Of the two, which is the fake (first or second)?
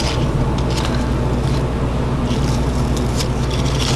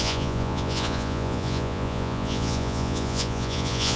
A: second